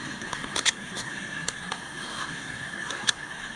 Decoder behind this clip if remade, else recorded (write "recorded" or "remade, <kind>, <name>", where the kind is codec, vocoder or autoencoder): remade, codec, SNAC